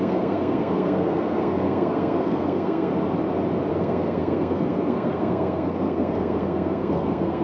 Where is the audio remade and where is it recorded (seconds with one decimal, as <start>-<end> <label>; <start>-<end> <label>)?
0.0-2.9 remade; 2.9-3.7 recorded; 3.7-7.4 remade